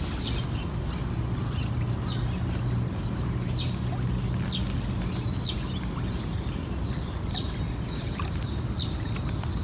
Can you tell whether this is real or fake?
real